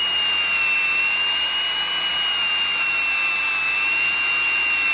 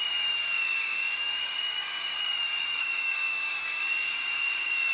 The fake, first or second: second